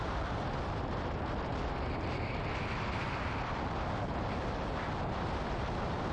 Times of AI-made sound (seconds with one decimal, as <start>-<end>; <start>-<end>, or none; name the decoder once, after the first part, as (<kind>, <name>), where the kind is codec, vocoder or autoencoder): none

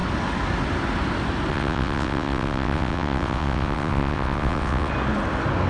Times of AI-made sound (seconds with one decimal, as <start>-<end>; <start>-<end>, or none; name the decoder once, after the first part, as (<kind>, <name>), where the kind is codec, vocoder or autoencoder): 1.5-4.9 (vocoder, WaveNeXt)